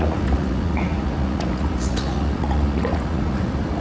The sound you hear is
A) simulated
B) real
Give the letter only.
A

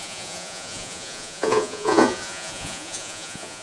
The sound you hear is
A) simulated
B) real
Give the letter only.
A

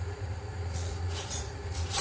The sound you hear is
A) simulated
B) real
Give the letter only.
A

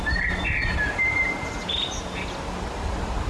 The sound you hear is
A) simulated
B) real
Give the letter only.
B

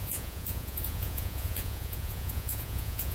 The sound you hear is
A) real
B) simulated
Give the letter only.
B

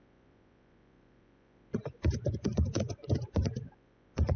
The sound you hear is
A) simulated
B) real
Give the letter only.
A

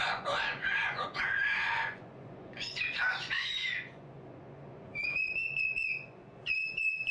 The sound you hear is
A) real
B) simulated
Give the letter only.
B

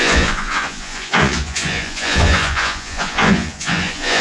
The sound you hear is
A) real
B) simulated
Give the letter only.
B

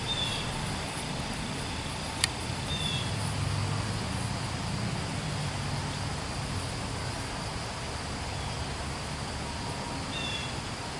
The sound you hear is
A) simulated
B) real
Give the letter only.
B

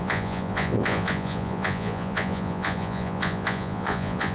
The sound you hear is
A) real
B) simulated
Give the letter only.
B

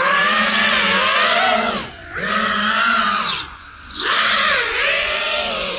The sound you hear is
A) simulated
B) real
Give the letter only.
A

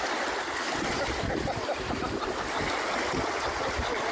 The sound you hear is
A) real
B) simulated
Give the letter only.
A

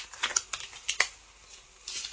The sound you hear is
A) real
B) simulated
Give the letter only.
A